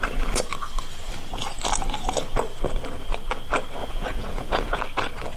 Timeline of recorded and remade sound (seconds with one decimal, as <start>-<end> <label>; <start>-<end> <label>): 0.0-3.8 recorded; 3.8-4.8 remade; 4.8-5.4 recorded